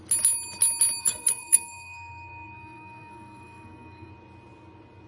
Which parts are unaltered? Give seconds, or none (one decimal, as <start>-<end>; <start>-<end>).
0.0-1.0; 4.1-5.1